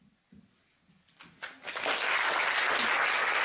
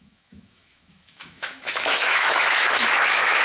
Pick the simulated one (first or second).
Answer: second